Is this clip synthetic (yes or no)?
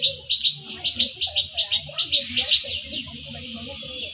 no